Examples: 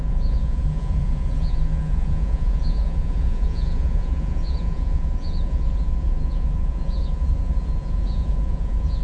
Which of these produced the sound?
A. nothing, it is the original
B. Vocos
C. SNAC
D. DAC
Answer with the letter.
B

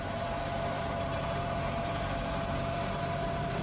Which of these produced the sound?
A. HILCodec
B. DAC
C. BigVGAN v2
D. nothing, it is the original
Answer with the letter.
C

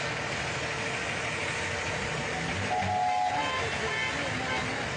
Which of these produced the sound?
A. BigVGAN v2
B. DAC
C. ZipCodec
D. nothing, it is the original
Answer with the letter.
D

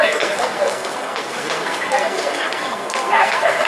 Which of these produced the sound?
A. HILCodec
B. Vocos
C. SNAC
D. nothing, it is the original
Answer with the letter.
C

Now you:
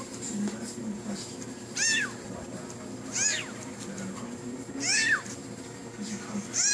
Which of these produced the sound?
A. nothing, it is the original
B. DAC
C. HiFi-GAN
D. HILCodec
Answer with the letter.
A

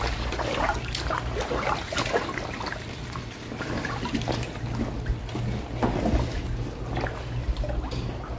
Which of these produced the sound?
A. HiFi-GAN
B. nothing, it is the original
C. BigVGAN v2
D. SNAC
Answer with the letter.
B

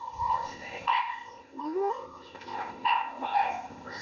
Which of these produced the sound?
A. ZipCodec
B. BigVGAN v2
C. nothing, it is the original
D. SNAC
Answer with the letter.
A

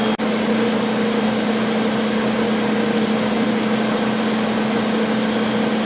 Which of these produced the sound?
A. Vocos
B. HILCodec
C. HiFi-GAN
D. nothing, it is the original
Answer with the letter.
D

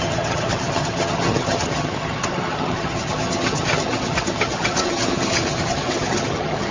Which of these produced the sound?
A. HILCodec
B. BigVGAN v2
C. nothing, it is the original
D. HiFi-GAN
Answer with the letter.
D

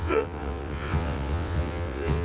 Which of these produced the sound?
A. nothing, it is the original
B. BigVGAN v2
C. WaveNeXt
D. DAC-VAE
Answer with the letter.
C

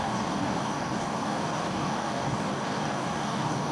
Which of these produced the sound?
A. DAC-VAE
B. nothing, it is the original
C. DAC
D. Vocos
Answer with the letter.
C